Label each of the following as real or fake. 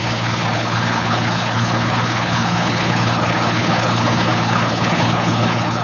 fake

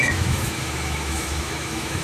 fake